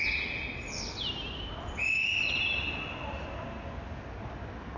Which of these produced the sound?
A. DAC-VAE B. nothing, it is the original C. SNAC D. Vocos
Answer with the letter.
B